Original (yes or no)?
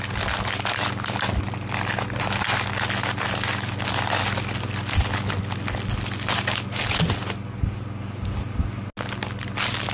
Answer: yes